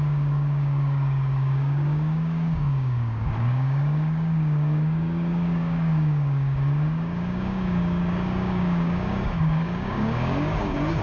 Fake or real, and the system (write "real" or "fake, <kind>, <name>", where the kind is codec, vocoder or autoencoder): fake, codec, DAC